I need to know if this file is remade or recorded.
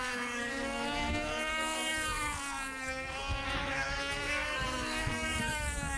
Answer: remade